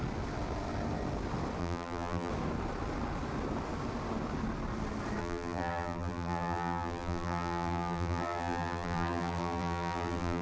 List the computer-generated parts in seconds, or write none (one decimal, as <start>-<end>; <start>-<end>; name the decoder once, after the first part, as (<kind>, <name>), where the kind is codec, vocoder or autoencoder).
1.6-2.3 (vocoder, BigVGAN v2); 5.2-10.4